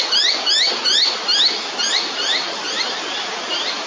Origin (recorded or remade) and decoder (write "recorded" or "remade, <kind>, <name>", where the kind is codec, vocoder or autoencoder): recorded